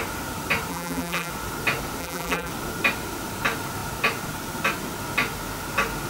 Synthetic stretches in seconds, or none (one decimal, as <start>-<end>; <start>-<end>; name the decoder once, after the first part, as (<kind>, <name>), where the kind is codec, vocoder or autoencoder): 0.7-1.3 (vocoder, BigVGAN v2); 2.0-2.5